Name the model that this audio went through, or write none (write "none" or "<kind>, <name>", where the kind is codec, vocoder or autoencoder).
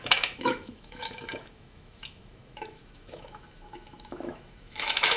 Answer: autoencoder, DAC-VAE